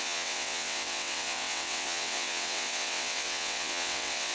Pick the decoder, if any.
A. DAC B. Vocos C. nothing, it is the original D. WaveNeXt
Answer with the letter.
D